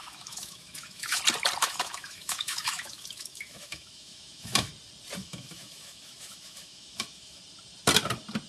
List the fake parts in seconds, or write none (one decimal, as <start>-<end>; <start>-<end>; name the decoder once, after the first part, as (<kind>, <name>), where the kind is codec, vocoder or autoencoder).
0.0-1.2 (autoencoder, DAC-VAE); 1.6-4.7; 5.2-7.4